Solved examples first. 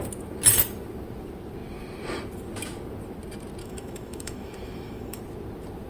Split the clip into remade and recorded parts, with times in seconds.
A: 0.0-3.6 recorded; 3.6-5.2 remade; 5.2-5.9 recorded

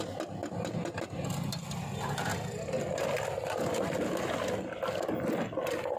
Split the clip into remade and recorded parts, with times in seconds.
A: 0.0-6.0 recorded

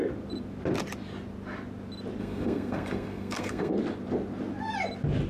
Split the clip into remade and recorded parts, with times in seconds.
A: 0.0-2.2 recorded; 2.2-3.7 remade; 3.7-5.3 recorded

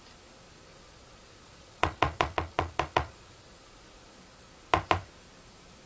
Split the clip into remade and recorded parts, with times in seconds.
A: 0.0-0.7 recorded; 0.7-4.2 remade; 4.2-5.9 recorded

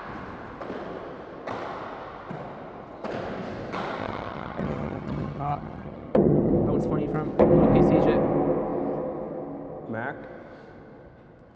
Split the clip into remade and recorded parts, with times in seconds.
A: 0.0-4.0 recorded; 4.0-6.5 remade; 6.5-11.6 recorded

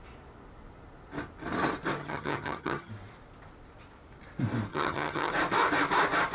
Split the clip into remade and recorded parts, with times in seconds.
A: 0.0-2.0 recorded; 2.0-2.9 remade; 2.9-4.7 recorded; 4.7-5.3 remade; 5.3-6.3 recorded